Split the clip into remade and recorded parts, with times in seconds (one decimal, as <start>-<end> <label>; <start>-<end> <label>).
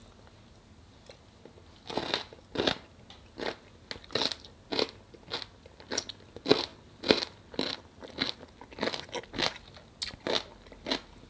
0.0-11.3 recorded